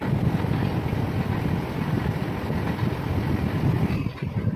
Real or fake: real